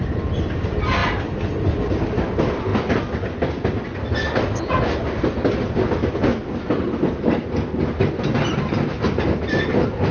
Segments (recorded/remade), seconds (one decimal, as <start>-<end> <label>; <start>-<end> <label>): 0.0-10.1 recorded